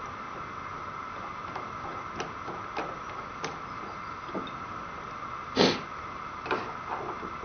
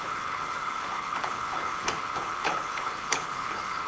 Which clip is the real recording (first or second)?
first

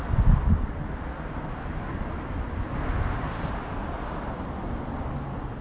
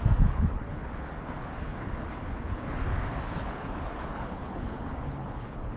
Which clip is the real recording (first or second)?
first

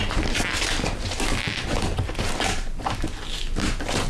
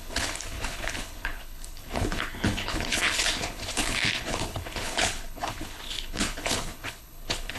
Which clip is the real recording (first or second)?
first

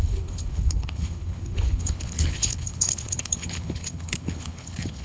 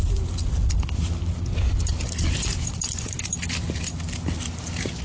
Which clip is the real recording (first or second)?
second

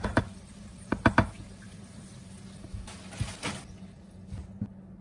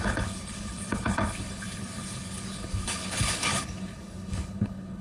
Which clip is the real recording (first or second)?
first